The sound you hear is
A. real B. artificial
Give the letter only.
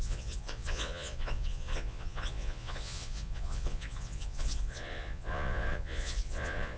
B